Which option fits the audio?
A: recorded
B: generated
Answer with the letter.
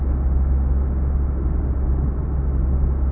A